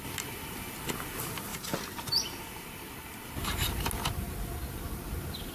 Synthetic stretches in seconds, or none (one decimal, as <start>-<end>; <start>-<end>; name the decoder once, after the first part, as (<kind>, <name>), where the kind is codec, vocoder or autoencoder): none